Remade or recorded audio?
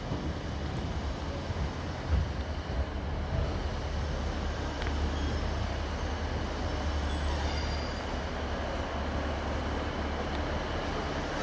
recorded